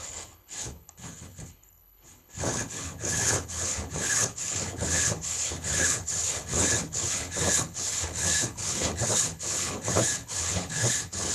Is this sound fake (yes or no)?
yes